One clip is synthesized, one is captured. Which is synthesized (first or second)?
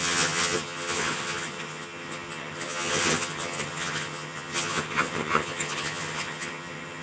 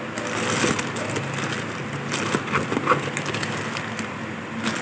first